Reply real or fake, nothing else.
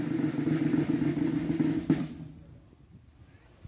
real